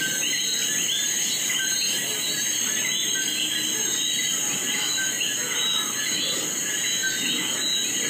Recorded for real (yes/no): yes